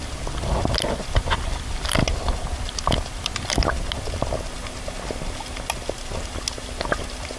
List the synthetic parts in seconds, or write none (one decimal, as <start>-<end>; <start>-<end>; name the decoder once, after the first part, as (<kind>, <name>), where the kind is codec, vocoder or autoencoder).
none